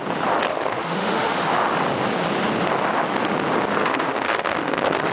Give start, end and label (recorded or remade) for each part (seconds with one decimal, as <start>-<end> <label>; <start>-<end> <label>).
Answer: 0.0-0.5 recorded; 0.5-1.5 remade; 1.5-3.8 recorded; 3.8-5.1 remade